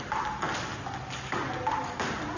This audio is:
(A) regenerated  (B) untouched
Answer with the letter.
B